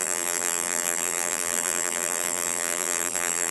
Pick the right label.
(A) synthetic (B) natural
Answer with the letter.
A